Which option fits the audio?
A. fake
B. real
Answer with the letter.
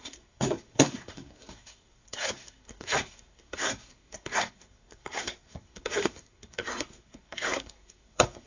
A